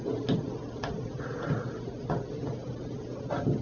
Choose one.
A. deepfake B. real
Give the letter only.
B